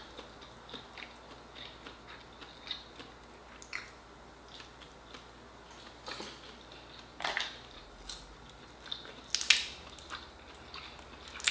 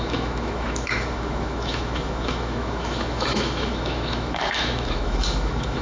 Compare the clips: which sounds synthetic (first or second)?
second